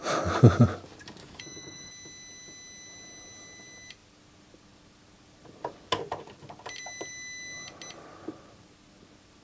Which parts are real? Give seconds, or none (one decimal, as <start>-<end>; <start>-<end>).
0.0-1.2; 1.9-9.4